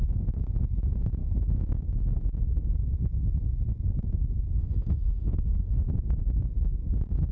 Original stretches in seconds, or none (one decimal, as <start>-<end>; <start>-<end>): 0.0-4.6; 5.8-7.3